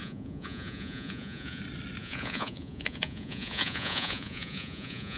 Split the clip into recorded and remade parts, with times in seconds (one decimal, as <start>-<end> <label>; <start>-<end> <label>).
0.0-1.6 remade; 1.6-2.0 recorded; 2.0-5.2 remade